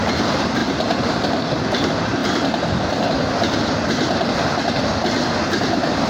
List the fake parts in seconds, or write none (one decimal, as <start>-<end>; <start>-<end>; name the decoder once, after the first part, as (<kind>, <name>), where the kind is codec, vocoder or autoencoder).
0.0-0.6 (vocoder, BigVGAN v2); 1.2-2.2; 4.8-6.1